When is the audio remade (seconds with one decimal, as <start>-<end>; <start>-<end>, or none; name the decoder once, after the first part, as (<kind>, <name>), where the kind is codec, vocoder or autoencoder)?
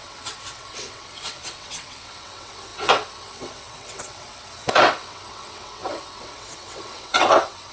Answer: 0.0-7.7 (vocoder, WaveNeXt)